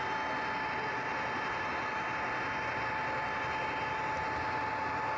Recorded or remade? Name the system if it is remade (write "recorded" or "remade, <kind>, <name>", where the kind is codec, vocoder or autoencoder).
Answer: recorded